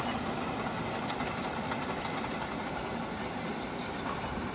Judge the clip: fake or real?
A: real